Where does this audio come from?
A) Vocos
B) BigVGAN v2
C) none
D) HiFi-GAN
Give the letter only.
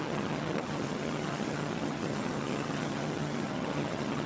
D